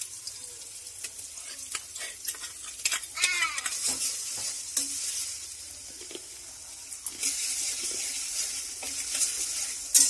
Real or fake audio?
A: real